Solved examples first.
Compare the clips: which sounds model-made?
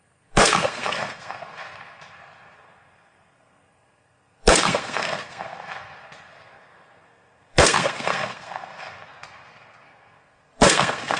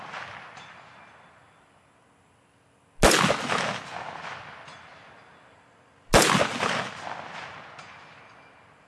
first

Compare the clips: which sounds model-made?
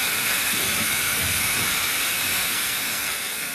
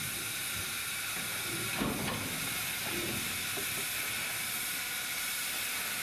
first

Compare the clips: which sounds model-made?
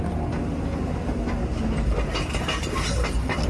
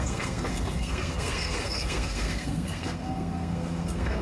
second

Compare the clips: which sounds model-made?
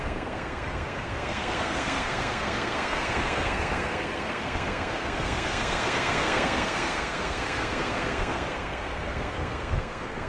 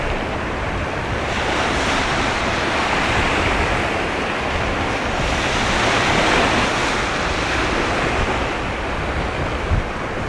first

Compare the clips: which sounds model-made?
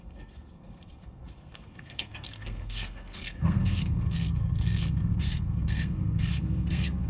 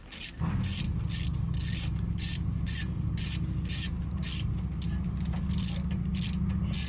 first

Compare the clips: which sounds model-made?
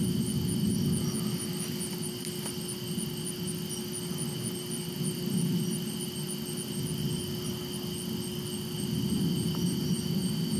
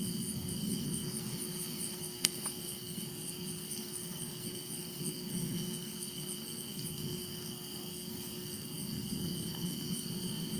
second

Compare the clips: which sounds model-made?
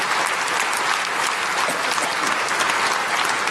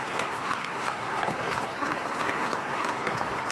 second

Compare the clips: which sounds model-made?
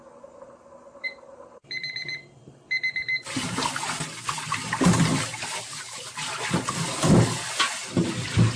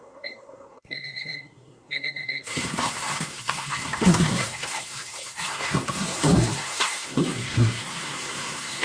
second